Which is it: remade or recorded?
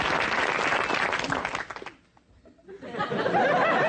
recorded